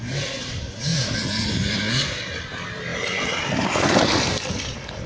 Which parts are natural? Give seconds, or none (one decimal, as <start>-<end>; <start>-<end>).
0.0-0.9; 1.5-2.9; 4.0-5.1